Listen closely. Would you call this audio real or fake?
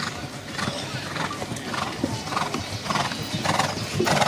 real